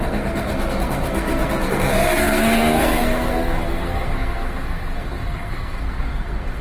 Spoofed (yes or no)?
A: yes